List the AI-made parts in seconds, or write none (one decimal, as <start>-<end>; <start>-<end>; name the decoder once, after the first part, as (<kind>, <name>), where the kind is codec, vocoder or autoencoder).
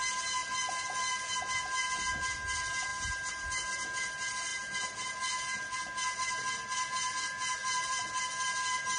7.6-8.2 (vocoder, BigVGAN v2)